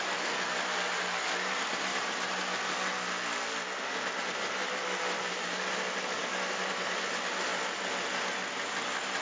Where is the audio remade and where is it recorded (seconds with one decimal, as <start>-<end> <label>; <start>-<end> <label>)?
0.0-9.2 recorded